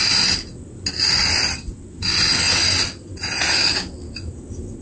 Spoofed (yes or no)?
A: no